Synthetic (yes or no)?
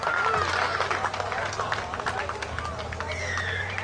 no